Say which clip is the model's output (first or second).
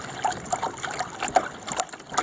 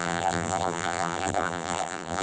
second